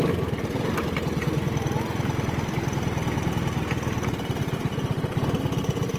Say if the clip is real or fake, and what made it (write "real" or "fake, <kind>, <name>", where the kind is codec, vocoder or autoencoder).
real